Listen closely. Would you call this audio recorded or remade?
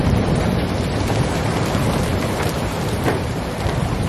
remade